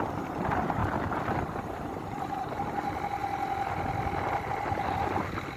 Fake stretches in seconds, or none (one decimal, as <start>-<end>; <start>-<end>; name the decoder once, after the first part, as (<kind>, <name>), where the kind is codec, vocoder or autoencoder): 3.2-5.6 (vocoder, BigVGAN v2)